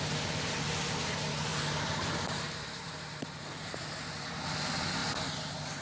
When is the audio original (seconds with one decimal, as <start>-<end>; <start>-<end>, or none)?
0.0-5.8